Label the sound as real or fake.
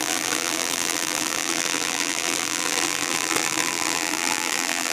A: fake